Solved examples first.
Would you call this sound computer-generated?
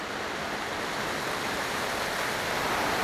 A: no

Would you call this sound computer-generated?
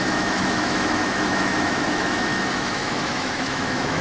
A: yes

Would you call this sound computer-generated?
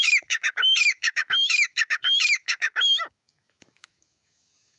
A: yes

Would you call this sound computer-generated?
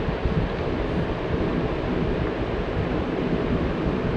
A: no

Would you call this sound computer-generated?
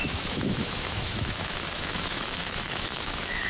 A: yes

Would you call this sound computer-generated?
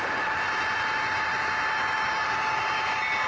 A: no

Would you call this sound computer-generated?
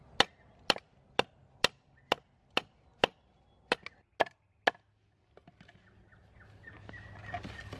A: no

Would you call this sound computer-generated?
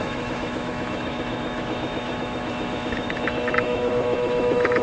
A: yes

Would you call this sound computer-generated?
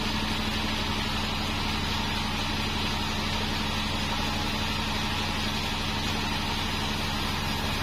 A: no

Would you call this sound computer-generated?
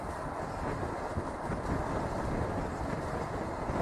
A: no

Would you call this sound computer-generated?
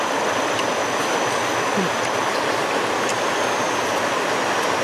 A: no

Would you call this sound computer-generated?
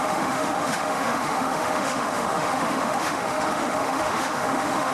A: yes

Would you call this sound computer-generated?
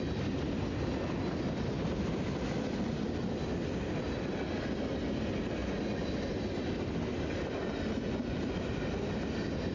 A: no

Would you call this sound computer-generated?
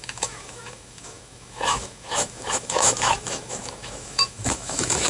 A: yes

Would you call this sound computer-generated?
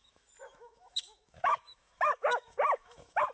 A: yes